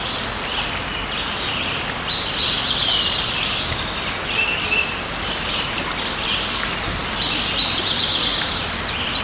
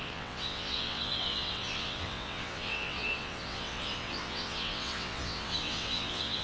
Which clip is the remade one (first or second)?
second